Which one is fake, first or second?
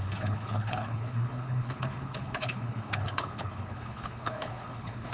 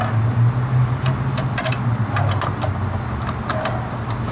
first